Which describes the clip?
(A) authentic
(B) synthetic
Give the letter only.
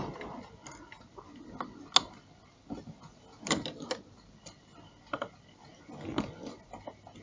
A